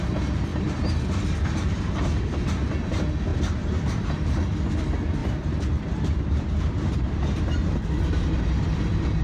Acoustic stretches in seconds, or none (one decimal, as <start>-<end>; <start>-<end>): 0.0-0.5; 1.0-3.3; 4.1-5.2; 7.4-9.2